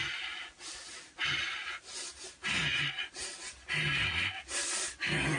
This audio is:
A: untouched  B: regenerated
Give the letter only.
A